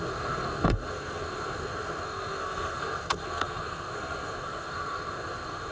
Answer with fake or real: fake